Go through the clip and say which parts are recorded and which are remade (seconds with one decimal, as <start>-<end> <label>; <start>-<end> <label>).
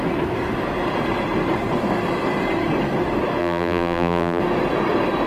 0.0-3.4 recorded; 3.4-4.4 remade; 4.4-5.3 recorded